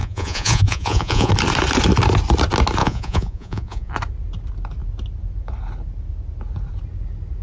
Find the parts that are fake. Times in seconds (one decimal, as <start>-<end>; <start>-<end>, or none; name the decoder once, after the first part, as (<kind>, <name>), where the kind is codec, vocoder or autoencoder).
0.0-1.3 (vocoder, Vocos); 2.8-3.9